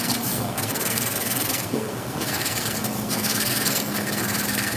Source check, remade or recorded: remade